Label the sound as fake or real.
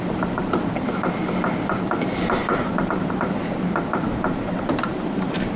fake